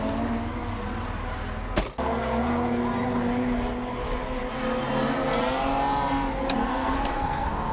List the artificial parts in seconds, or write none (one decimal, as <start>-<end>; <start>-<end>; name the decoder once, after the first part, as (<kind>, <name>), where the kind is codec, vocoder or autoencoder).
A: 6.7-7.7 (codec, SNAC)